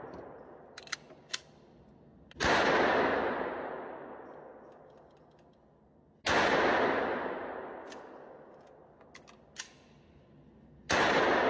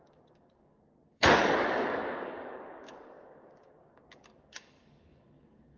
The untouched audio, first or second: first